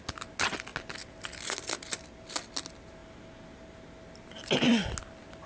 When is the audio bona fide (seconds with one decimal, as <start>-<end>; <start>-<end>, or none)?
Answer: 0.0-5.5